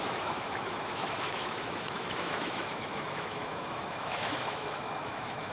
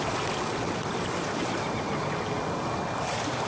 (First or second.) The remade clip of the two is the first